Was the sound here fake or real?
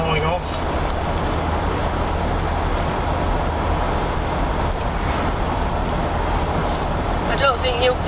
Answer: real